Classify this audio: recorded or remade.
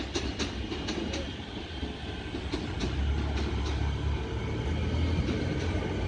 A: recorded